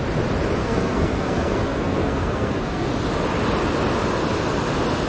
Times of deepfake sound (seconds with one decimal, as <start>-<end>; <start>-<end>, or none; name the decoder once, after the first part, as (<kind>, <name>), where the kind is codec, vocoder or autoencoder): 0.6-2.9 (codec, SNAC)